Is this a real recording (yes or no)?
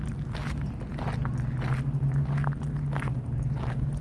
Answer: yes